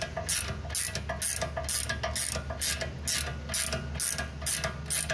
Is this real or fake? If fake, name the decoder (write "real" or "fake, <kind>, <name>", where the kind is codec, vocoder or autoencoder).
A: real